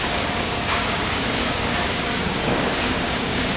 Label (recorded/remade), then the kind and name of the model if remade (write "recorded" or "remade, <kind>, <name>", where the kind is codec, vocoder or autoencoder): remade, codec, DAC